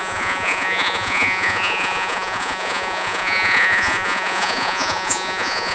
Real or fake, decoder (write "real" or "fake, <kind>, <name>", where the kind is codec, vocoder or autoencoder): fake, vocoder, Vocos